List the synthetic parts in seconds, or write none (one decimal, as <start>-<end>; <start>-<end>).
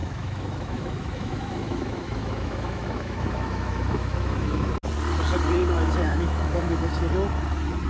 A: 0.0-4.7; 5.6-7.1